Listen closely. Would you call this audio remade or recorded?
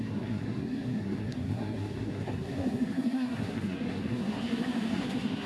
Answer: remade